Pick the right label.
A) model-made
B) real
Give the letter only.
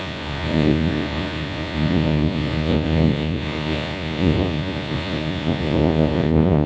A